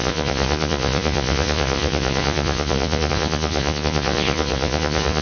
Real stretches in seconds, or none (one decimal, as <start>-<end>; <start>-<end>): none